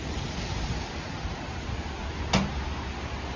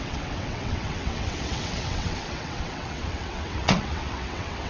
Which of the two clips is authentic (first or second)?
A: first